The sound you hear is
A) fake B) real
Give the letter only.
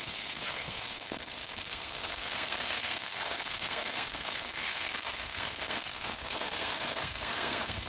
A